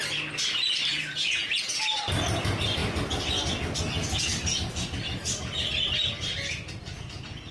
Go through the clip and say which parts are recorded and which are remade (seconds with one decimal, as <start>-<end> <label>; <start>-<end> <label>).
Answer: 0.0-0.9 recorded; 0.9-2.0 remade; 2.0-7.5 recorded